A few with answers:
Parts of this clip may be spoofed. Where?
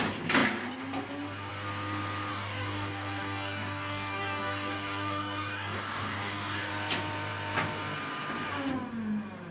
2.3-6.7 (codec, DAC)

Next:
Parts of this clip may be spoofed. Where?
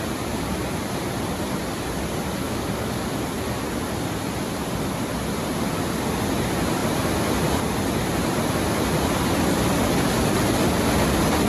2.4-3.0 (codec, DAC)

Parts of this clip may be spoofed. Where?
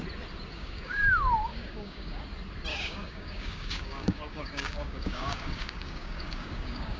0.5-1.1 (codec, DAC); 1.5-2.2; 2.7-7.0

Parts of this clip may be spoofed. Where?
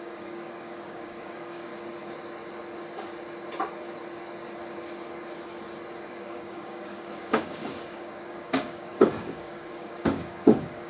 0.0-1.7 (codec, DAC); 6.1-10.9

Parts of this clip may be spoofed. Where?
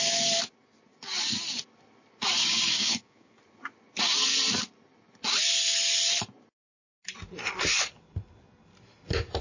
2.4-3.4 (codec, DAC)